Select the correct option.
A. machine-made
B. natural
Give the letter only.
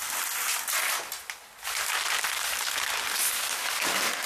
B